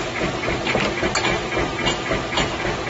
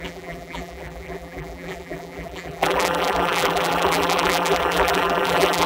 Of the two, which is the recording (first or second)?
first